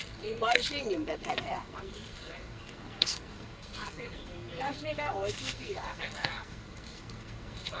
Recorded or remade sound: remade